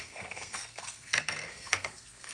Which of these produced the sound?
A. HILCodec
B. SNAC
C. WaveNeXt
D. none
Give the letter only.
B